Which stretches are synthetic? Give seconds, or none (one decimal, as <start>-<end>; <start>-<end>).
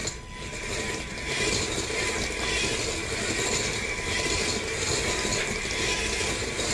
none